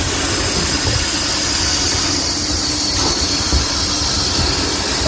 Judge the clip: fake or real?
real